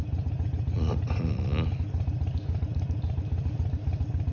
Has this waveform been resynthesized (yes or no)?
no